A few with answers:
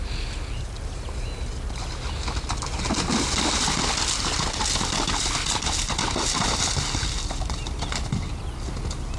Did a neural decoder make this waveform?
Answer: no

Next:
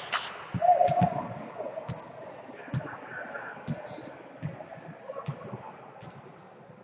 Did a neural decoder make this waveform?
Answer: no